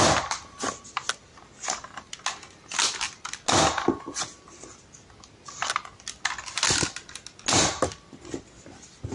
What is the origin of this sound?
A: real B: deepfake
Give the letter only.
A